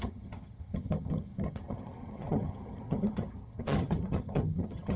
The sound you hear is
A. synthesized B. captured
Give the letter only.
A